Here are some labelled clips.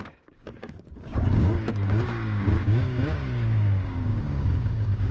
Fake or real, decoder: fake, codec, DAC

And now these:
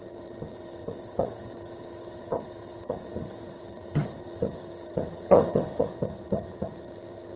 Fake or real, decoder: fake, vocoder, HiFi-GAN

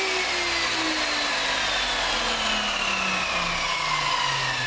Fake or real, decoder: real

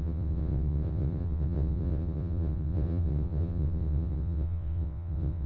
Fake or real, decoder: fake, vocoder, WaveNeXt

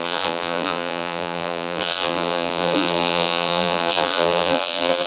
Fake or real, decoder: fake, vocoder, BigVGAN v2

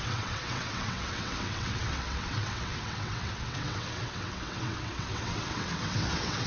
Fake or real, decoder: fake, vocoder, WaveNeXt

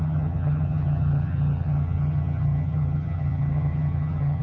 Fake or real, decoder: fake, vocoder, HiFi-GAN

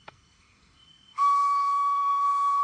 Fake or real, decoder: fake, codec, SNAC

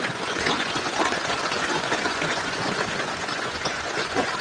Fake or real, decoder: fake, vocoder, Vocos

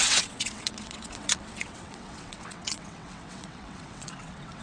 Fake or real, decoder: fake, vocoder, WaveNeXt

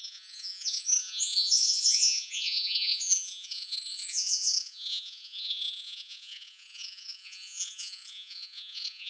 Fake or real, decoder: fake, vocoder, Vocos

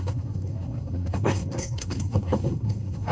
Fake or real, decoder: fake, codec, SNAC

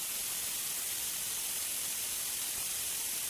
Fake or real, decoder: fake, vocoder, BigVGAN v2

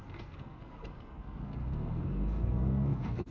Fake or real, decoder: fake, codec, SNAC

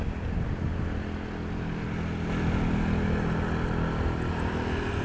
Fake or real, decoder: real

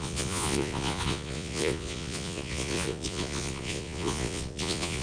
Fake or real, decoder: fake, vocoder, Vocos